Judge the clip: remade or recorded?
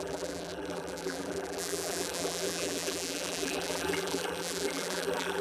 remade